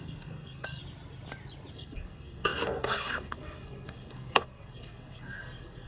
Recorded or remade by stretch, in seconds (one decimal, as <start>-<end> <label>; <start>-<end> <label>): 0.0-0.8 remade; 0.8-1.7 recorded; 1.7-5.9 remade